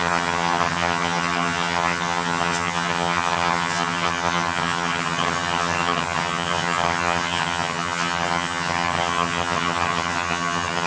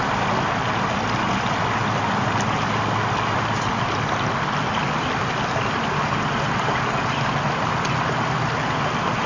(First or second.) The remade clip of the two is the first